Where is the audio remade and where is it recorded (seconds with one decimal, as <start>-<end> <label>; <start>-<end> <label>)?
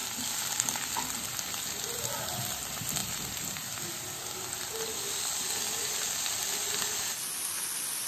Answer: 0.0-8.1 recorded